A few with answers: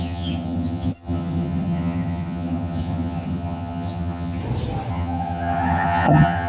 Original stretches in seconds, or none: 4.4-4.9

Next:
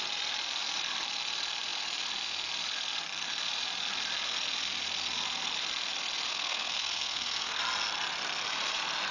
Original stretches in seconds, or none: 0.0-6.3; 7.6-9.1

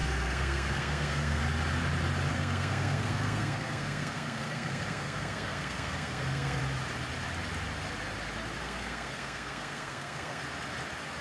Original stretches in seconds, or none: 1.4-2.3; 6.6-8.6; 10.4-11.2

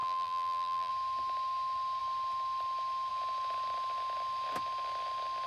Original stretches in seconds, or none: 0.9-5.5

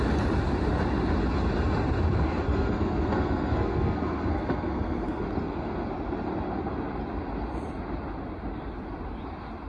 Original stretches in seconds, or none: 0.0-2.5; 5.2-9.7

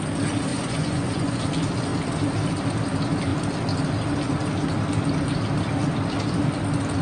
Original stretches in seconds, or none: 0.0-0.5; 1.4-7.0